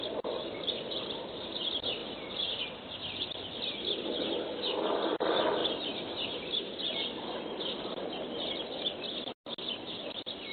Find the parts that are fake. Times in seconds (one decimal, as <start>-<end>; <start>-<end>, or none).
none